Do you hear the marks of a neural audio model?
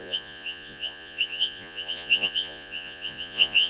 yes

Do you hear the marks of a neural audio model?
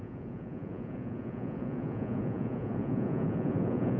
yes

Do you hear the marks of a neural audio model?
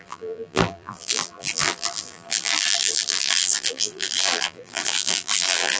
yes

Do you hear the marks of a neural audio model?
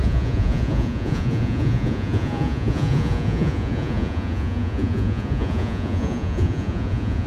yes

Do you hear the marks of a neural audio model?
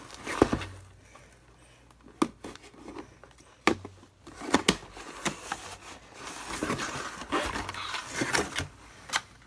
no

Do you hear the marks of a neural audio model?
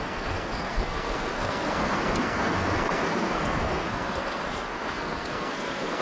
yes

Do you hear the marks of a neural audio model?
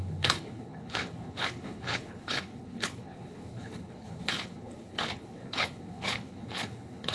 yes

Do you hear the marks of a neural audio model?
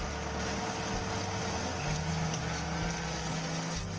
no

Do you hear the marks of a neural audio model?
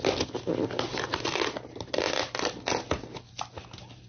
no